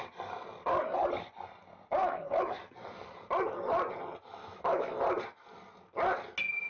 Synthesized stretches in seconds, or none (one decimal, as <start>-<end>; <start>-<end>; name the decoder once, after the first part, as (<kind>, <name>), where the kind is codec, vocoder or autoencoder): 2.0-2.6 (autoencoder, DAC-VAE); 4.4-5.0